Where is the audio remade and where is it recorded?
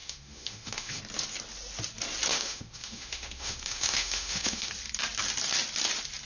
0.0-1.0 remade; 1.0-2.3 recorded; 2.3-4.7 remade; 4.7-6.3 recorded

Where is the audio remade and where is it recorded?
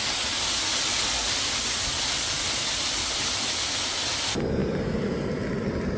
0.0-6.0 recorded